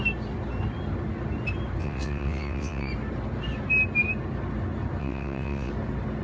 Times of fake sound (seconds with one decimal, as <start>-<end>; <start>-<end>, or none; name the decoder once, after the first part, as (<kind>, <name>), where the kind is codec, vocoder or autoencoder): 1.8-2.9 (vocoder, WaveNeXt); 5.0-5.7